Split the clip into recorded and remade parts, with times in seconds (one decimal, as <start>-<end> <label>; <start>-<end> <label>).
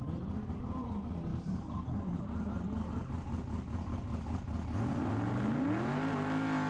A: 0.0-6.7 recorded